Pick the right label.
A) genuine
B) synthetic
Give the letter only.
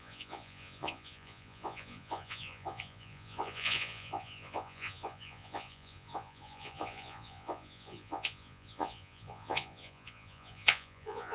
B